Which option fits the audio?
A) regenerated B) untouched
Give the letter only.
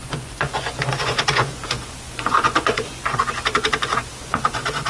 A